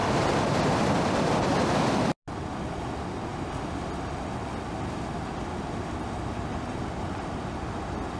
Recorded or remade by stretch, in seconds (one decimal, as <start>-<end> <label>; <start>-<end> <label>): 0.0-8.2 recorded